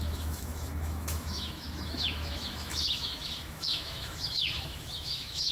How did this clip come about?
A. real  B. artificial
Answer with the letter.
B